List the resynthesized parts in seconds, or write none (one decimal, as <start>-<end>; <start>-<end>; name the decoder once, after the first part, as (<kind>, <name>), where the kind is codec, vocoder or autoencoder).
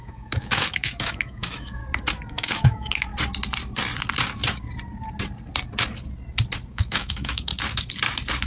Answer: 0.0-1.8 (autoencoder, DAC-VAE); 2.3-3.1; 6.7-7.5